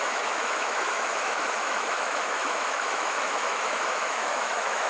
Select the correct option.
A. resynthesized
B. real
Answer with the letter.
A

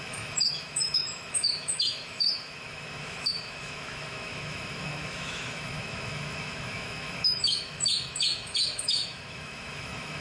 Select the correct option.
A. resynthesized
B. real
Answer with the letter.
A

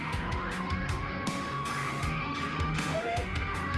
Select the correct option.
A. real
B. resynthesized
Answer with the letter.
B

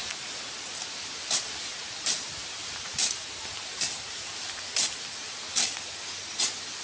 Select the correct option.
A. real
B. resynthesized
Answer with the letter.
A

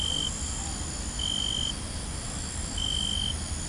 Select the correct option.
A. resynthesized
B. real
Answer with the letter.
B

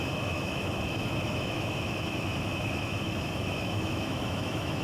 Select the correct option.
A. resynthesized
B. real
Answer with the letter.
A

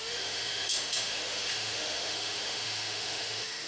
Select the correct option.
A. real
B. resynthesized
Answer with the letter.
B